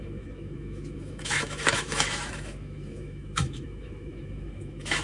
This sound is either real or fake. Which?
fake